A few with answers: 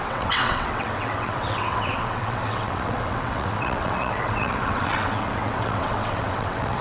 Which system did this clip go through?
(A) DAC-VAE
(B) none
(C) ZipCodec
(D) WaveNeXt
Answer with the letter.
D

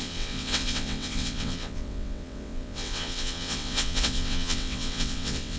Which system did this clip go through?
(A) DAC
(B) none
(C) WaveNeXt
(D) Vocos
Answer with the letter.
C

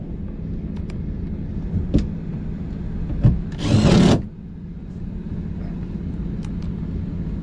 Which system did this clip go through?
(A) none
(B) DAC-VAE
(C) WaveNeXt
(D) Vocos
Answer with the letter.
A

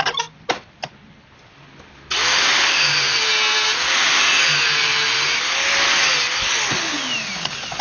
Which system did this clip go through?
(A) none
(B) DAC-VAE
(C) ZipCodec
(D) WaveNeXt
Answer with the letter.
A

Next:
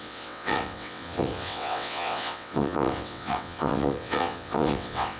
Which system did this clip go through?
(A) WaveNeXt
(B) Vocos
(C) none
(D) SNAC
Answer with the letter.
A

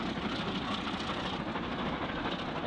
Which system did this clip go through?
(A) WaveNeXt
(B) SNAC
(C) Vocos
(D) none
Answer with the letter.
D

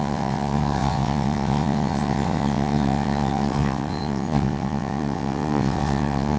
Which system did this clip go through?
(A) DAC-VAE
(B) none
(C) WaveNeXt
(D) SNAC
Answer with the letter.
C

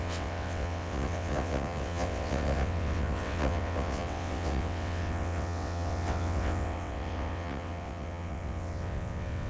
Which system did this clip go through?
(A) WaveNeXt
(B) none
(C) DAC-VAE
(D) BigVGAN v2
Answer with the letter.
A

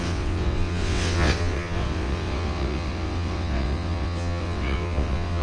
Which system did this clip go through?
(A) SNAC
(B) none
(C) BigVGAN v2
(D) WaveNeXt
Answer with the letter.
D